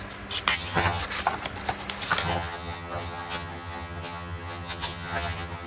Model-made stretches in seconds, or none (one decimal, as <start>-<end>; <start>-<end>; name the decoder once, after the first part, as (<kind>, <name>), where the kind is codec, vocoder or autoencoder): 0.5-1.0 (vocoder, HiFi-GAN); 2.2-5.7